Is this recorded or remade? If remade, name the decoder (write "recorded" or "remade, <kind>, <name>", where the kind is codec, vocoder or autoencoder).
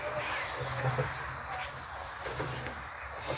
recorded